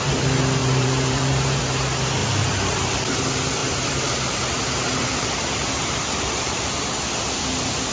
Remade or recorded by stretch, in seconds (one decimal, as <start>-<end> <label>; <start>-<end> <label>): 0.0-0.6 recorded; 0.6-1.6 remade; 1.6-2.2 recorded; 2.2-3.0 remade; 3.0-3.6 recorded; 3.6-6.8 remade; 6.8-7.9 recorded